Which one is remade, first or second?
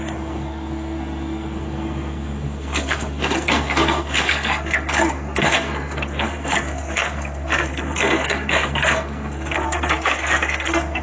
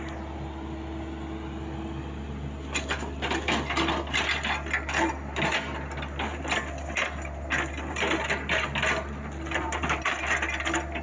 first